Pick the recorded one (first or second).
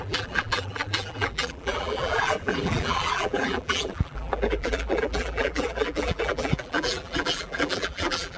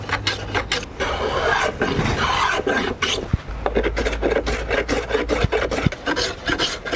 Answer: second